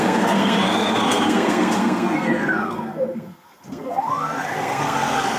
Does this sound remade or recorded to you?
remade